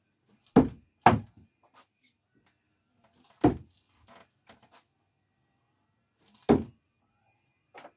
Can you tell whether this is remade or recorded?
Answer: recorded